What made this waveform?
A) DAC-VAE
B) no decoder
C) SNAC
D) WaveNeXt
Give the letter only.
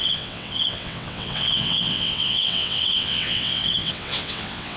D